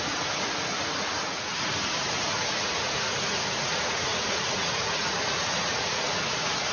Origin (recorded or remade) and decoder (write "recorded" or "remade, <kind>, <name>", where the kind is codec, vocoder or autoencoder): remade, vocoder, Vocos